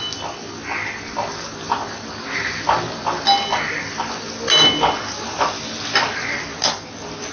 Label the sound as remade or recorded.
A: recorded